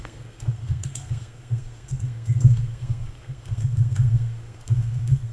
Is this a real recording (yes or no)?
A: no